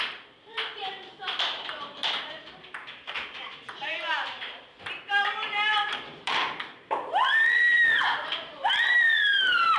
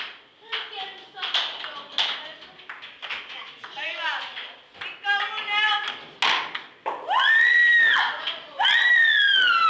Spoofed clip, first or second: first